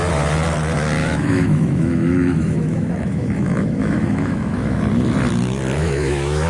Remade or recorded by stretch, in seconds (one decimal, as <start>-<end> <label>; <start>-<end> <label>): 0.0-1.0 recorded; 1.0-4.8 remade; 4.8-5.8 recorded; 5.8-6.5 remade